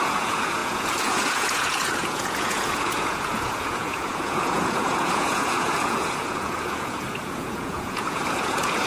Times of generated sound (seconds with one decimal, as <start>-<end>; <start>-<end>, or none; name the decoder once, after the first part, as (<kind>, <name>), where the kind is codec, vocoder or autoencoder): 0.0-8.9 (vocoder, Vocos)